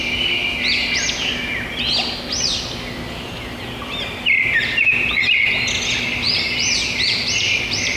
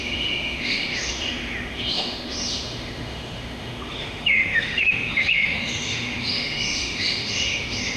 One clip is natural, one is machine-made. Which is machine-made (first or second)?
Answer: second